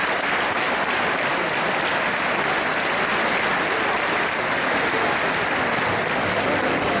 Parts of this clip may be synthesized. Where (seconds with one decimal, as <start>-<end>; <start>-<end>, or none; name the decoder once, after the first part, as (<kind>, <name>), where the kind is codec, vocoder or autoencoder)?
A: none